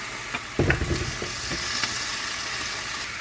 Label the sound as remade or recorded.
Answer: recorded